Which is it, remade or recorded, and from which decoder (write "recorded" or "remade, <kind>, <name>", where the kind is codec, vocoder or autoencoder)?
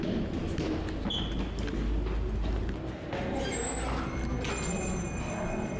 recorded